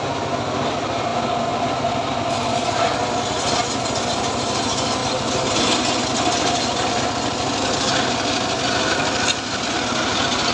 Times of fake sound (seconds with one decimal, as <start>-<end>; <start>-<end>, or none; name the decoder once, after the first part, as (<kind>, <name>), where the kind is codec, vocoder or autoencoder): none